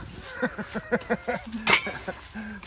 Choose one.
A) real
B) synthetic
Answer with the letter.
A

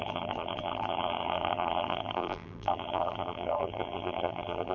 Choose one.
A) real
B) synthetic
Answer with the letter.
B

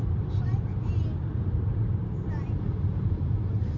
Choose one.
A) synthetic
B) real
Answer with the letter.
A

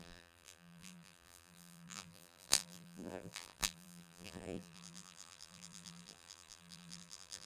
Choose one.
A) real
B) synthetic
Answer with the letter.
B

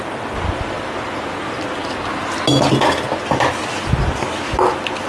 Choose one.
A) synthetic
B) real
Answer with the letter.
B